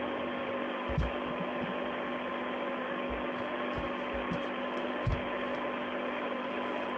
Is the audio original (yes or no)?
yes